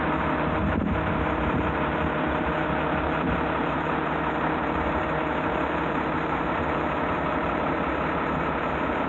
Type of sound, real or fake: fake